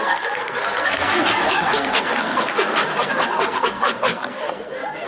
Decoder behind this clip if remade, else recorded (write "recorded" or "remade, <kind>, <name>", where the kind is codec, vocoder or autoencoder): remade, codec, SNAC